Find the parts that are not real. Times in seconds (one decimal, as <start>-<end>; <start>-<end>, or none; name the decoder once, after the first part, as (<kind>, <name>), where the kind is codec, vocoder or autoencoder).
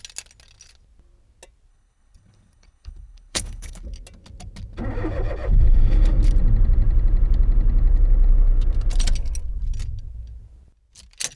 1.7-3.8 (codec, HILCodec)